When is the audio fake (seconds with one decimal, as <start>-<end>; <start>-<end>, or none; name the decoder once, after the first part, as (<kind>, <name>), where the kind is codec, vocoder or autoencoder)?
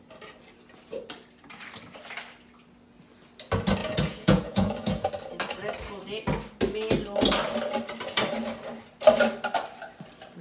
3.8-5.1 (vocoder, Vocos)